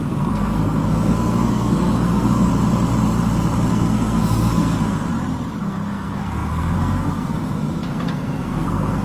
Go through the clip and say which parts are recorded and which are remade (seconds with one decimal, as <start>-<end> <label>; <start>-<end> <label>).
0.0-2.5 remade; 2.5-3.7 recorded; 3.7-5.1 remade; 5.1-5.6 recorded; 5.6-9.0 remade